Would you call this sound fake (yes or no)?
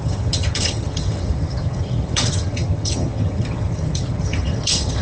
yes